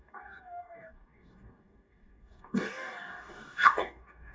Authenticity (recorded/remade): remade